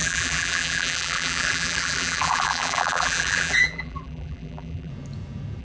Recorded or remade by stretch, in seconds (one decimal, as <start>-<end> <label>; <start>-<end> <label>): 0.0-4.9 remade; 4.9-5.6 recorded